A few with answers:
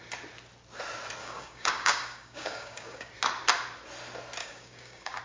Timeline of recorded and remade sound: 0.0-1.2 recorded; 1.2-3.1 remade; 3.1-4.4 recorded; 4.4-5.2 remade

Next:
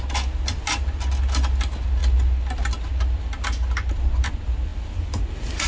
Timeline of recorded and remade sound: 0.0-5.7 recorded

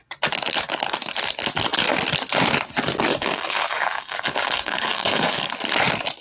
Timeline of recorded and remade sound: 0.0-3.1 recorded; 3.1-5.5 remade; 5.5-6.2 recorded

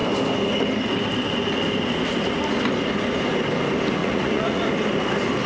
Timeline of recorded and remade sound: 0.0-4.0 recorded; 4.0-4.6 remade; 4.6-5.5 recorded

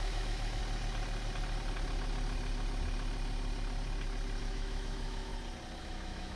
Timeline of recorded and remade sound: 0.0-0.6 remade; 0.6-4.4 recorded; 4.4-5.3 remade; 5.3-5.8 recorded; 5.8-6.4 remade

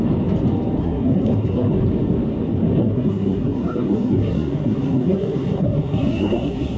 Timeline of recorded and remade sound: 0.0-0.8 recorded; 0.8-1.8 remade; 1.8-2.8 recorded; 2.8-6.8 remade

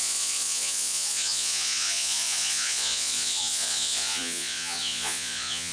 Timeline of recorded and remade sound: 0.0-5.7 remade

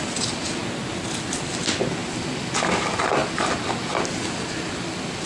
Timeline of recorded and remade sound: 0.0-0.6 recorded; 0.6-1.5 remade; 1.5-5.3 recorded